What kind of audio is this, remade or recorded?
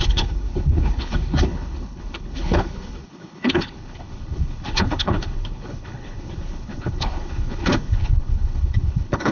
remade